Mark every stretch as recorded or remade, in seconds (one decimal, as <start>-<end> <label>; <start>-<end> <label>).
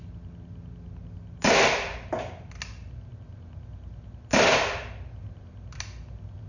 0.0-6.5 recorded